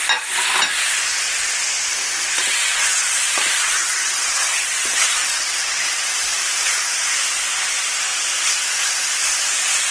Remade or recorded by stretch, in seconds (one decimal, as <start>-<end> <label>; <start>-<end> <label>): 0.0-2.4 recorded; 2.4-6.1 remade; 6.1-9.9 recorded